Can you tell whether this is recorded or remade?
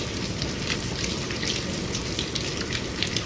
recorded